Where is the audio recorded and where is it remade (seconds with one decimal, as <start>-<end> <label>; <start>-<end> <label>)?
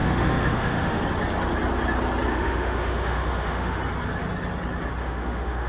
0.0-1.0 remade; 1.0-2.3 recorded; 2.3-3.8 remade; 3.8-5.0 recorded; 5.0-5.7 remade